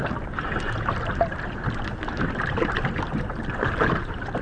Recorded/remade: recorded